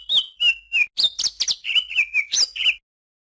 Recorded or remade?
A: recorded